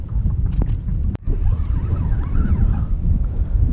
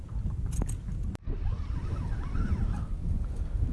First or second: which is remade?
first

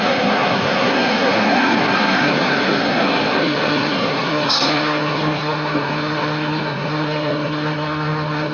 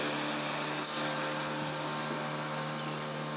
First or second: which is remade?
first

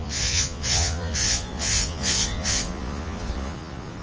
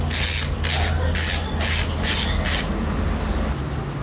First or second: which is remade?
first